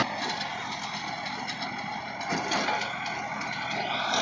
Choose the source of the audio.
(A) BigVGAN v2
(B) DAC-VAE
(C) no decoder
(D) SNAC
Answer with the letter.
C